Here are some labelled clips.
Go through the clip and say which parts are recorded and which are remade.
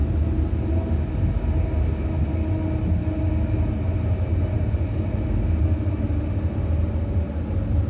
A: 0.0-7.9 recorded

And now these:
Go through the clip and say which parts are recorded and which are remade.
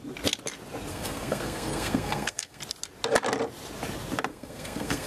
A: 0.0-0.9 recorded; 0.9-2.6 remade; 2.6-4.3 recorded; 4.3-5.1 remade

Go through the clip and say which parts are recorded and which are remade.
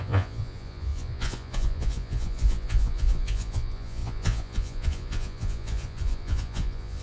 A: 0.0-7.0 remade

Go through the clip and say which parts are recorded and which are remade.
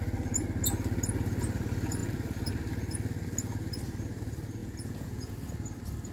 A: 0.0-4.6 recorded; 4.6-5.3 remade; 5.3-6.1 recorded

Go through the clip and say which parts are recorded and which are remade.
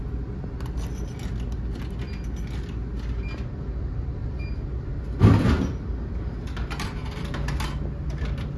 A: 0.0-8.6 recorded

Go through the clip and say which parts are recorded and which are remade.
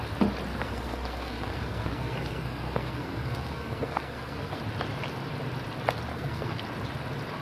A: 0.0-0.5 recorded; 0.5-4.6 remade; 4.6-6.1 recorded; 6.1-6.6 remade; 6.6-7.4 recorded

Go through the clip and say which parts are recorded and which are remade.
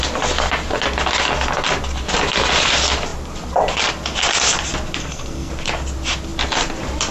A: 0.0-5.0 recorded; 5.0-5.5 remade; 5.5-7.1 recorded